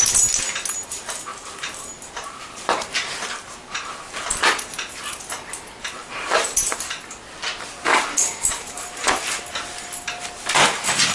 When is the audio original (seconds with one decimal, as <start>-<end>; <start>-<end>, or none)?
0.0-1.3; 4.2-6.0; 6.9-7.9; 9.1-11.1